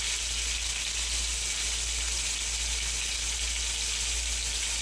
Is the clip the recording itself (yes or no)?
yes